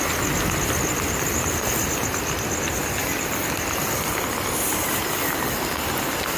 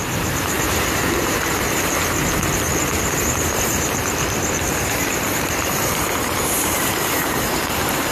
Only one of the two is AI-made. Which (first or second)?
second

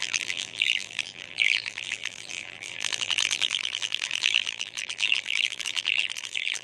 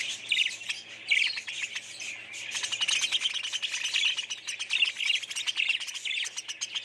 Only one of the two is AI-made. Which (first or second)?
first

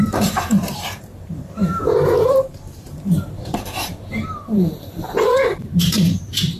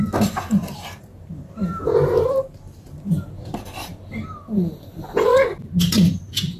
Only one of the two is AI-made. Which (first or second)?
first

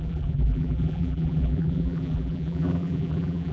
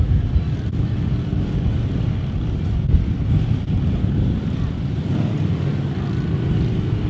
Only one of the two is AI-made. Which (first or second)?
first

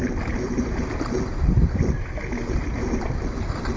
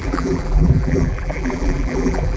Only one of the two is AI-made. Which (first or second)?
second